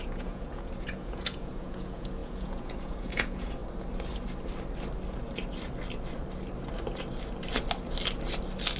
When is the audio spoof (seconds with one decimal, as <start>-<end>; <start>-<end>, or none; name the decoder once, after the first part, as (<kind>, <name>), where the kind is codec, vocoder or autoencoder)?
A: 0.0-3.6 (vocoder, Vocos)